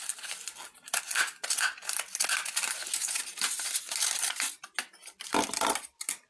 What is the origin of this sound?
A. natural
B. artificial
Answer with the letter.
A